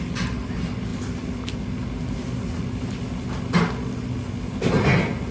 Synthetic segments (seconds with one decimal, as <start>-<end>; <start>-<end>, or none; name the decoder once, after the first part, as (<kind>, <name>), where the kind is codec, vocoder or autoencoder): none